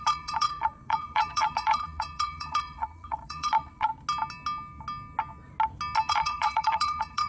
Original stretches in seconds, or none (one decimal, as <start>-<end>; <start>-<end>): 3.9-6.1